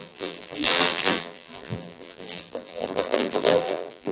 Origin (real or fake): fake